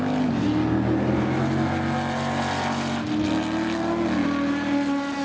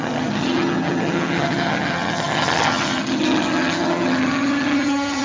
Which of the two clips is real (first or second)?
first